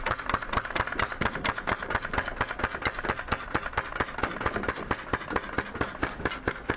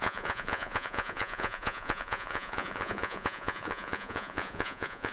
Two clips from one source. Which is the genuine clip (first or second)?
first